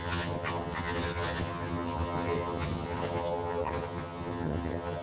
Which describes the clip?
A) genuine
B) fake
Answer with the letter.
B